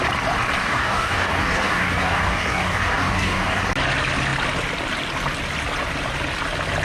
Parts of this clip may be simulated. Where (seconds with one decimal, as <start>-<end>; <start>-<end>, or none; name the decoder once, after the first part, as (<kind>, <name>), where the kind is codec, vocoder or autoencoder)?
0.6-3.6 (codec, DAC)